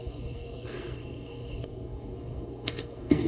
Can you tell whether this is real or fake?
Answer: fake